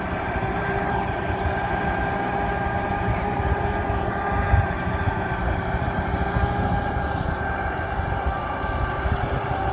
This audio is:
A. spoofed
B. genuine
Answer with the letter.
A